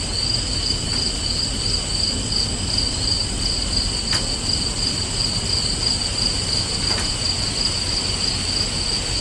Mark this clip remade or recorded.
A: recorded